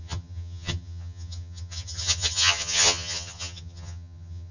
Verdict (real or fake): fake